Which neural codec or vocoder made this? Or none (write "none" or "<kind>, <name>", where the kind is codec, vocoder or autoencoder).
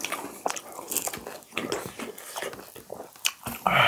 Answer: none